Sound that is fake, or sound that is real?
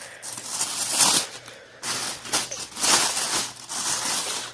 real